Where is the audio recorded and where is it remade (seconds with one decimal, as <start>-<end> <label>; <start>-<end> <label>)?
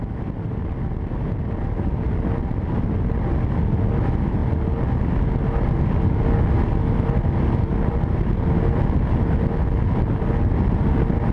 0.0-11.3 recorded